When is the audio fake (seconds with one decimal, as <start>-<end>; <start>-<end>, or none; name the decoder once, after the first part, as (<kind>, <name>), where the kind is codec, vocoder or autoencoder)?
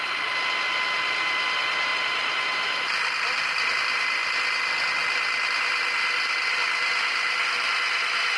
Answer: 1.9-3.7 (vocoder, BigVGAN v2)